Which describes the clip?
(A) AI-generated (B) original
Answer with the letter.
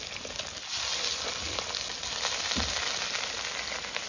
B